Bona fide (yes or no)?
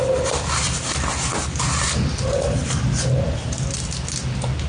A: yes